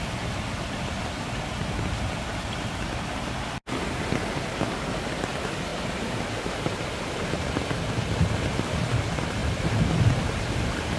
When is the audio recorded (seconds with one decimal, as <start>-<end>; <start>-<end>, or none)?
0.0-11.0